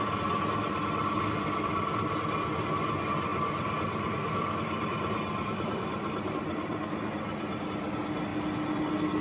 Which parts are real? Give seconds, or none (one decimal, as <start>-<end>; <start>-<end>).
0.0-3.3; 7.7-9.2